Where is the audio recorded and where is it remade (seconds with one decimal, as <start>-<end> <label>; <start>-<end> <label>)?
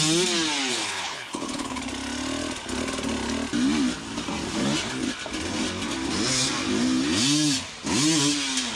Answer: 0.0-0.7 recorded; 0.7-1.8 remade; 1.8-8.8 recorded